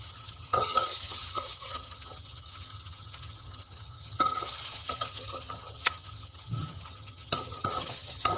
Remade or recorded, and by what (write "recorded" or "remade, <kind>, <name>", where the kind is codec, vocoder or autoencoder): remade, vocoder, HiFi-GAN